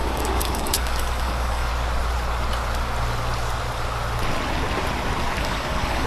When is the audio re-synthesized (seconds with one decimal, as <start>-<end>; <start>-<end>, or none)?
0.0-1.7; 5.4-6.1